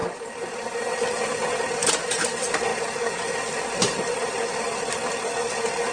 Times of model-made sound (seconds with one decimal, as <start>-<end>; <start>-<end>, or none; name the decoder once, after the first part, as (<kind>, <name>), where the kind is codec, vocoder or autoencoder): none